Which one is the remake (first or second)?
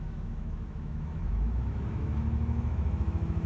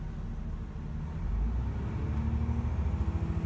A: first